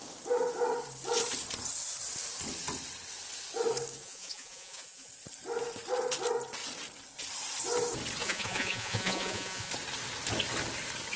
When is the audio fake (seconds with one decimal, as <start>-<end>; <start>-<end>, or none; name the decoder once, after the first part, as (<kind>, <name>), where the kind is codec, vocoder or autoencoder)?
4.0-5.1 (vocoder, Vocos); 8.2-9.7